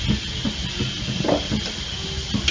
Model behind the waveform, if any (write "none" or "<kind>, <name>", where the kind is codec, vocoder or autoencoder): none